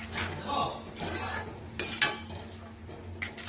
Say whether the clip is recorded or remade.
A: recorded